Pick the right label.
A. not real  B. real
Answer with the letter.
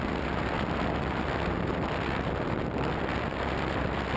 B